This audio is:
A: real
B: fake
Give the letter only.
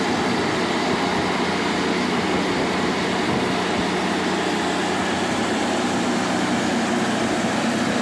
A